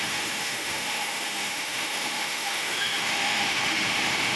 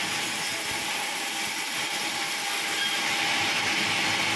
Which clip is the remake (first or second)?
first